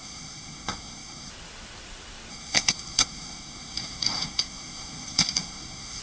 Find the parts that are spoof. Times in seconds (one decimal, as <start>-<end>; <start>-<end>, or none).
0.0-1.3; 2.3-6.0